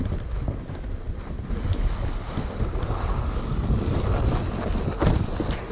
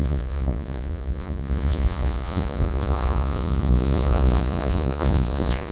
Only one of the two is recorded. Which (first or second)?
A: first